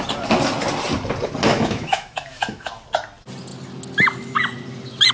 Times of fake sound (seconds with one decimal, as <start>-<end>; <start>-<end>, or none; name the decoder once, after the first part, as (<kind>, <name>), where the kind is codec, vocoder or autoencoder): 1.5-2.7 (autoencoder, DAC-VAE)